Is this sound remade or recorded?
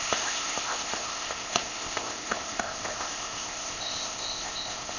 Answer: remade